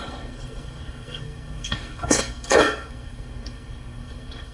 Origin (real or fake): fake